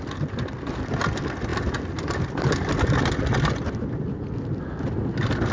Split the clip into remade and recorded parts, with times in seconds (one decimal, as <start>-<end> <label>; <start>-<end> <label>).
0.0-5.5 recorded